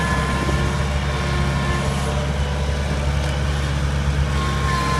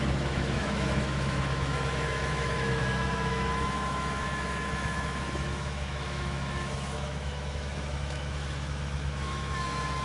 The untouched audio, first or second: first